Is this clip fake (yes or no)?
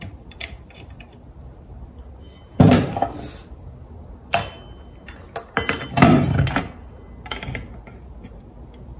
no